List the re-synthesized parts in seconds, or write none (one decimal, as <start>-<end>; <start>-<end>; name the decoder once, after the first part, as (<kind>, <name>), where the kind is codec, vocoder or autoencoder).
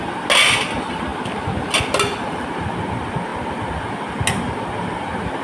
none